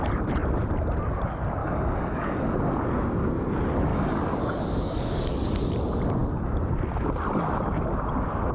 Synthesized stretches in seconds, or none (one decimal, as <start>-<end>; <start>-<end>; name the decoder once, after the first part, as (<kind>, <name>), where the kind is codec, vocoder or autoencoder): 1.6-2.5 (codec, DAC); 3.9-5.5